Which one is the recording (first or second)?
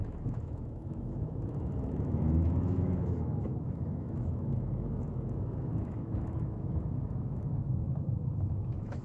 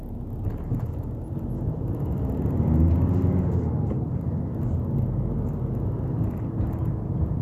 second